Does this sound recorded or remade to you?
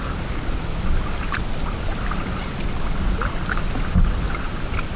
recorded